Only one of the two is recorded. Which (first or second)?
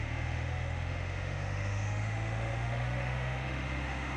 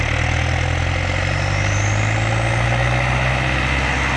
second